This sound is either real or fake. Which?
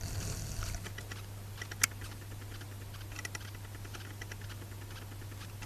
real